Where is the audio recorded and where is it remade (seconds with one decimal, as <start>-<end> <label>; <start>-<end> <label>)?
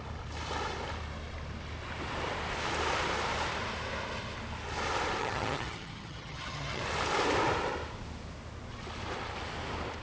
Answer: 0.0-5.2 recorded; 5.2-6.8 remade; 6.8-10.0 recorded